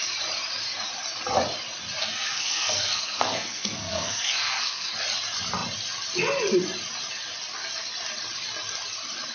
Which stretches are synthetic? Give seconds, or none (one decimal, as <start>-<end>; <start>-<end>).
2.0-4.9